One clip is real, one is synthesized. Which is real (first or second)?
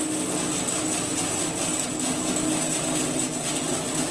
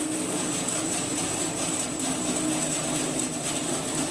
first